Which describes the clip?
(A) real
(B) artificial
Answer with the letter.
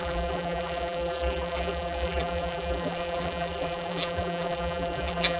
B